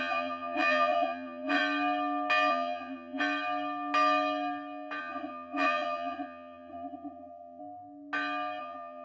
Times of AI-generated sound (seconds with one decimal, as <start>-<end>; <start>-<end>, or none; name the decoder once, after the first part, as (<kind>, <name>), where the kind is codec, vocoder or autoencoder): 0.0-1.6 (vocoder, Vocos); 2.5-3.2; 5.0-7.6; 8.6-9.0